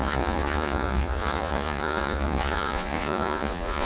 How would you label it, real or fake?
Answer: fake